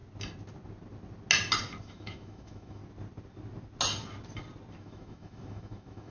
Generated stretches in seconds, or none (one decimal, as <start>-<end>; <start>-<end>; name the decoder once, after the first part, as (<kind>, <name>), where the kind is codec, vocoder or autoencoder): 1.8-2.8 (autoencoder, DAC-VAE); 4.8-6.1